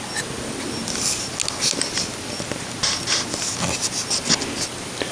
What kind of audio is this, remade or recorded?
recorded